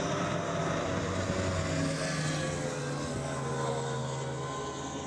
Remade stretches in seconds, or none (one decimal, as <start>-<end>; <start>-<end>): none

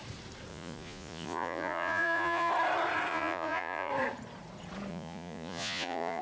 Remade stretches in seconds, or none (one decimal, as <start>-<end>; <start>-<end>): 0.5-2.5; 3.1-3.9; 4.9-6.2